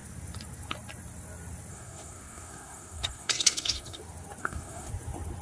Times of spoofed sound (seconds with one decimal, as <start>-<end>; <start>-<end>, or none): 1.7-4.0; 4.4-4.9